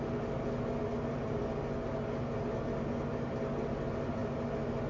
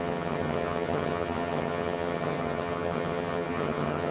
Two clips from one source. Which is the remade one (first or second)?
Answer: second